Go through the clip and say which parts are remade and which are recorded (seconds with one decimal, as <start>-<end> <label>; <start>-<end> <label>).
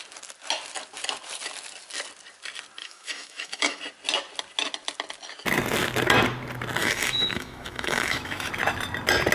0.0-2.8 recorded; 2.8-3.8 remade; 3.8-6.8 recorded; 6.8-8.5 remade; 8.5-9.3 recorded